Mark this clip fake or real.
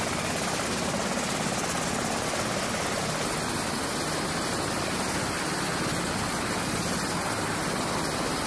real